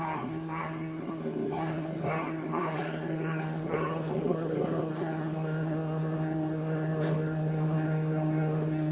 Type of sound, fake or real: fake